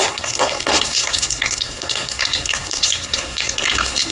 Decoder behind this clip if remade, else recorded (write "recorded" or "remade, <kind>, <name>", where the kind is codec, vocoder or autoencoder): remade, codec, SNAC